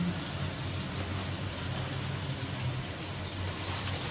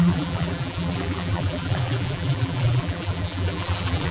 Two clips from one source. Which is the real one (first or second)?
first